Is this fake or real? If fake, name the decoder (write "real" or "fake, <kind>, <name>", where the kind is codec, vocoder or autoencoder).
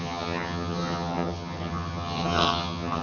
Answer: fake, vocoder, HiFi-GAN